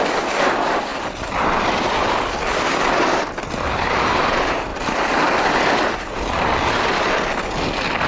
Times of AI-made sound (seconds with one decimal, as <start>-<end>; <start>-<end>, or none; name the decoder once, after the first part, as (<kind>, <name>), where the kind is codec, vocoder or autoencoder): 0.9-1.9 (vocoder, BigVGAN v2); 4.7-6.7